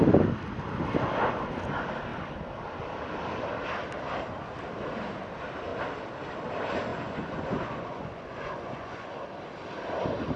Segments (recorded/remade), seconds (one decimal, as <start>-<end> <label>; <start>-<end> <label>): 0.0-6.9 recorded; 6.9-9.1 remade; 9.1-10.4 recorded

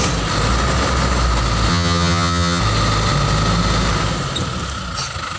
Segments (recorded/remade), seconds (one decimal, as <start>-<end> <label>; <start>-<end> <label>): 0.0-1.7 recorded; 1.7-2.6 remade; 2.6-5.4 recorded

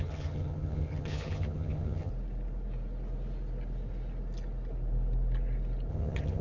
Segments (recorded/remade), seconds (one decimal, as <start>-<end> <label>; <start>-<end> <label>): 0.0-2.1 remade; 2.1-5.9 recorded; 5.9-6.4 remade

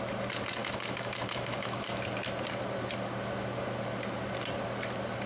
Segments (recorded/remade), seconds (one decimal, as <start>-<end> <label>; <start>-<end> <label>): 0.0-0.6 recorded; 0.6-2.0 remade; 2.0-5.3 recorded

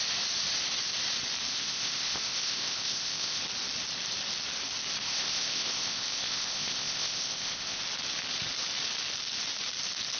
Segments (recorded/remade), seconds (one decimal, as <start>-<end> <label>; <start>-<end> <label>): 0.0-1.5 recorded; 1.5-3.4 remade; 3.4-4.9 recorded; 4.9-7.8 remade; 7.8-10.2 recorded

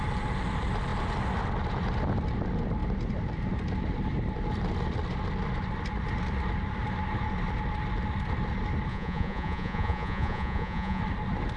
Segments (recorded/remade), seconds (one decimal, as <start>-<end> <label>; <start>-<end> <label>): 0.0-8.9 recorded; 8.9-11.0 remade; 11.0-11.6 recorded

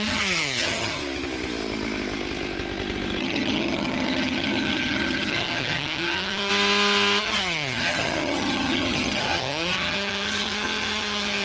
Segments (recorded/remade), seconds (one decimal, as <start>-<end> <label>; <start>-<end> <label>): 0.0-1.0 remade; 1.0-3.2 recorded; 3.2-6.5 remade; 6.5-7.2 recorded; 7.2-11.4 remade